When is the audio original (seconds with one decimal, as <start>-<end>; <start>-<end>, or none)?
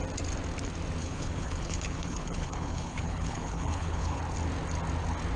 0.0-1.0; 4.2-5.4